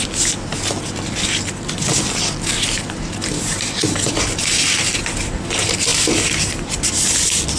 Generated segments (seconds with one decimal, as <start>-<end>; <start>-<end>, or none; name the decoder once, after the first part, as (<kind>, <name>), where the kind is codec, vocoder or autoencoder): none